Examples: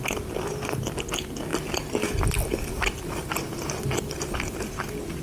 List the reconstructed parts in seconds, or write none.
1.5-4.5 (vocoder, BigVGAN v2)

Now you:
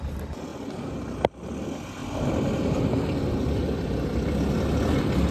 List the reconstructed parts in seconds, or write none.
2.0-5.3 (vocoder, BigVGAN v2)